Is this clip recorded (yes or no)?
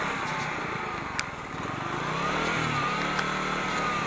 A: yes